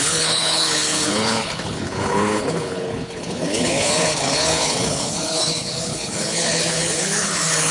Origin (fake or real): fake